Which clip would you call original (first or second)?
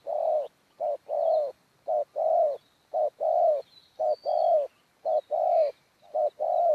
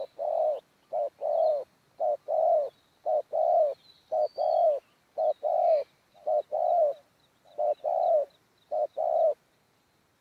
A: second